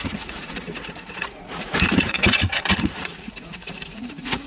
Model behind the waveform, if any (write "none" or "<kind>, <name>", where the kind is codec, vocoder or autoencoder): vocoder, Vocos